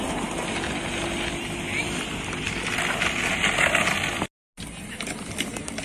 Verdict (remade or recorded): recorded